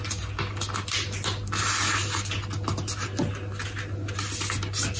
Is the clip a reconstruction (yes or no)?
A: no